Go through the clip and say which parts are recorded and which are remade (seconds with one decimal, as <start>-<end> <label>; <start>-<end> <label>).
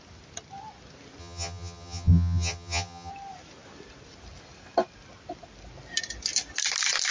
0.0-1.2 recorded; 1.2-3.1 remade; 3.1-7.1 recorded